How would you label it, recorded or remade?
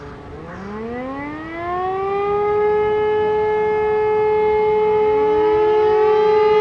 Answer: recorded